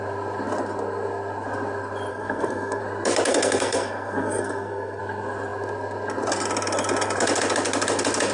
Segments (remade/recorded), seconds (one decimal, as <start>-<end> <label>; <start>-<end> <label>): 0.0-2.1 recorded; 2.1-2.8 remade; 2.8-3.3 recorded; 3.3-5.0 remade; 5.0-8.3 recorded